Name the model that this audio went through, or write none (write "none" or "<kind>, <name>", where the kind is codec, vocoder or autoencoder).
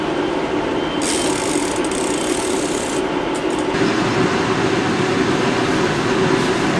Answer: none